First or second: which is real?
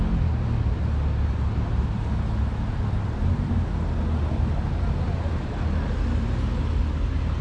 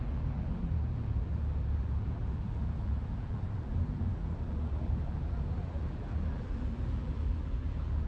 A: first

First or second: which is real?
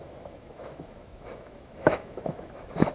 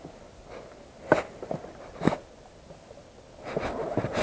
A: second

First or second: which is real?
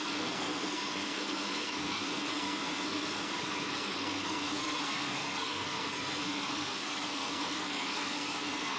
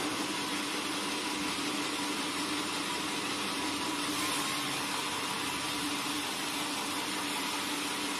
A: second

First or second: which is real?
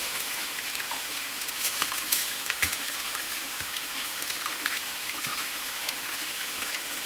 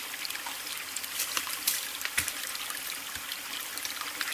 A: second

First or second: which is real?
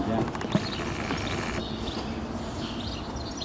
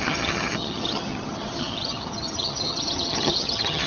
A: first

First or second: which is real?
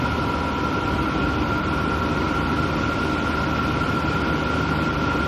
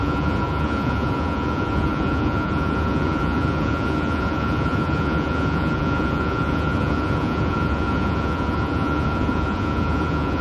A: first